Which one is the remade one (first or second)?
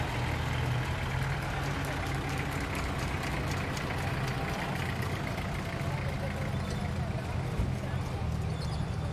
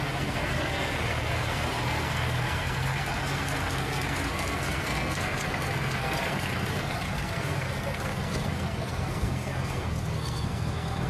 second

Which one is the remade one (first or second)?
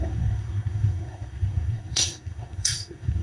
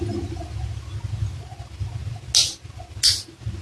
first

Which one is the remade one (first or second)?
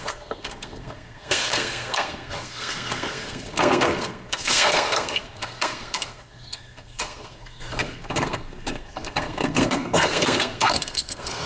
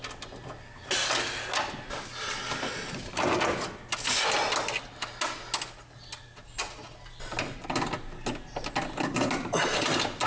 first